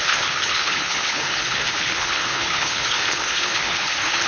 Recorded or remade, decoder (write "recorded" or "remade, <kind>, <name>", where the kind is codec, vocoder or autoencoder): remade, codec, HILCodec